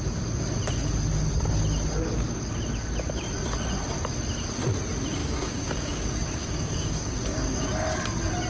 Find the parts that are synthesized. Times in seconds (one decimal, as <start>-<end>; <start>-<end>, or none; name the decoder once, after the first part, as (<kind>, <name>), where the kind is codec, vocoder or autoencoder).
5.2-7.7 (codec, DAC)